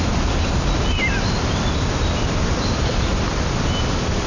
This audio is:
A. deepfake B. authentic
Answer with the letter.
B